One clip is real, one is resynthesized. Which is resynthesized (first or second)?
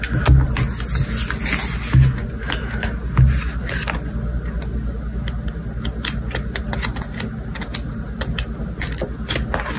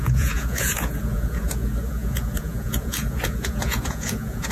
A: second